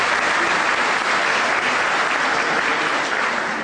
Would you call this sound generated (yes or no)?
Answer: no